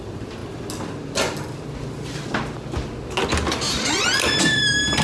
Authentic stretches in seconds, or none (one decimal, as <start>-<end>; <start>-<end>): 0.0-5.0